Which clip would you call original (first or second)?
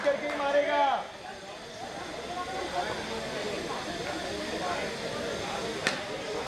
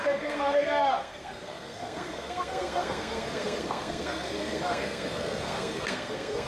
first